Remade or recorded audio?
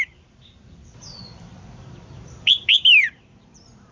remade